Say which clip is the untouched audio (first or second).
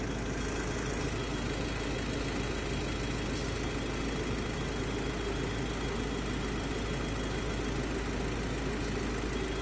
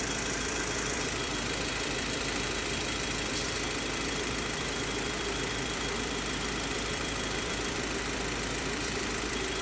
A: first